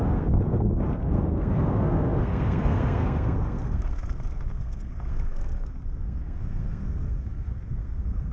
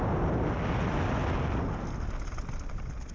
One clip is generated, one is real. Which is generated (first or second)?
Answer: first